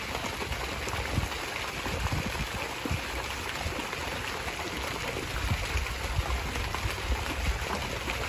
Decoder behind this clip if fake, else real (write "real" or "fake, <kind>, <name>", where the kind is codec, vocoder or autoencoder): real